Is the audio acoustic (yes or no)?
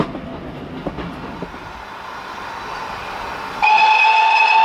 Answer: yes